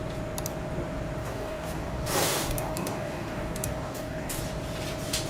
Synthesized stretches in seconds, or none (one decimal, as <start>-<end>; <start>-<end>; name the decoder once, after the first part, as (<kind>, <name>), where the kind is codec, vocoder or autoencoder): 1.2-4.4 (codec, DAC)